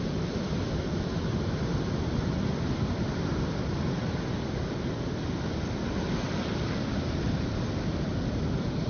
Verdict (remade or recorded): recorded